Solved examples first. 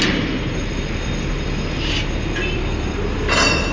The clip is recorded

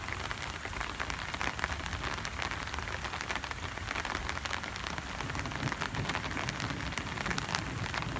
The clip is recorded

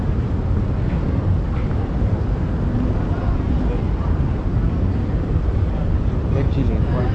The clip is recorded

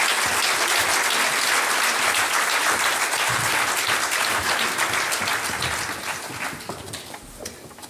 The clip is recorded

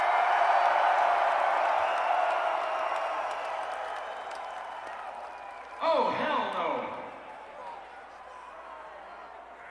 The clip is recorded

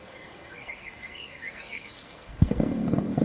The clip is remade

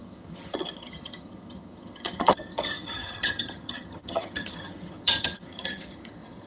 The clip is remade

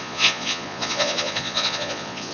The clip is remade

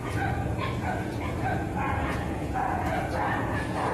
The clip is remade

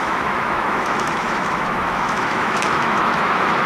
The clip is remade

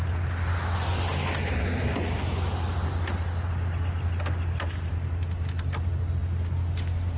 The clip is recorded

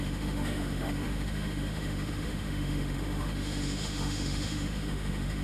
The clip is remade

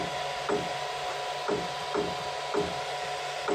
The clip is recorded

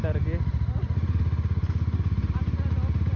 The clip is recorded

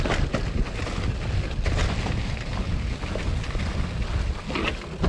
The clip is recorded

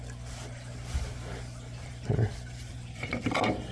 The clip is remade